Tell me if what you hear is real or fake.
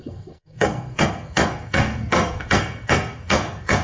fake